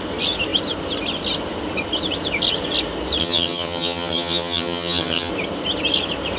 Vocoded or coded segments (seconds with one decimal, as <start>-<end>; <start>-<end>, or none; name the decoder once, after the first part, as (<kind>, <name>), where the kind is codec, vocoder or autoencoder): 3.2-5.3 (vocoder, HiFi-GAN)